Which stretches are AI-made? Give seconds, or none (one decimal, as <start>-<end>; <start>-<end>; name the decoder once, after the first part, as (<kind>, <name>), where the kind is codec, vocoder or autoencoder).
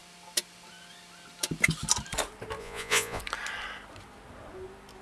2.6-3.2 (vocoder, Vocos)